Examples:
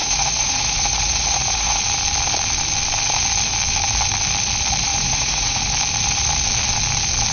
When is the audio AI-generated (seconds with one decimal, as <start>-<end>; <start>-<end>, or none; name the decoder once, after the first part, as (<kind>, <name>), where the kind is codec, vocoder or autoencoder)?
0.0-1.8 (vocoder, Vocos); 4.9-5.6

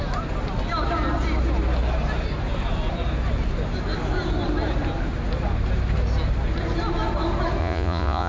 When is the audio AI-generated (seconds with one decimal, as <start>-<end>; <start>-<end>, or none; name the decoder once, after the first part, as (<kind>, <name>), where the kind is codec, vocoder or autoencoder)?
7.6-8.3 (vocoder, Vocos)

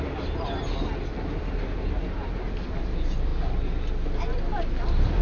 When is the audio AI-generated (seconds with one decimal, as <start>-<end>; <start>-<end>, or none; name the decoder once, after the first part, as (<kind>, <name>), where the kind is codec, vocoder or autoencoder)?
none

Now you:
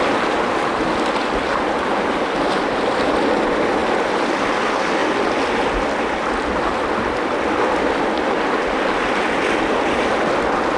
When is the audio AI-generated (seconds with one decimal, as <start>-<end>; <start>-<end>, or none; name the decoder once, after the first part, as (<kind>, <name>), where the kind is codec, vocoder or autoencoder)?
1.5-2.6 (vocoder, BigVGAN v2)

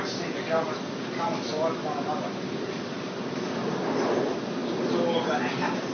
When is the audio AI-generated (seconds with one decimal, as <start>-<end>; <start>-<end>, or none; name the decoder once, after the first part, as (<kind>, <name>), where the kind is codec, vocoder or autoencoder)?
none